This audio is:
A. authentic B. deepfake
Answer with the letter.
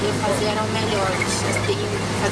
A